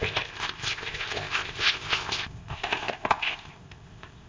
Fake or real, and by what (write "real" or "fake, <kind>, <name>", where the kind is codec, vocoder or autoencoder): fake, codec, ZipCodec